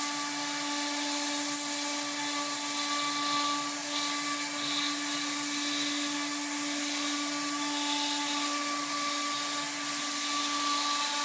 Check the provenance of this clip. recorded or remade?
recorded